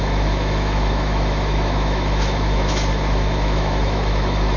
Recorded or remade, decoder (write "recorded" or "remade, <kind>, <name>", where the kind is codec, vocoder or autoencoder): remade, autoencoder, DAC-VAE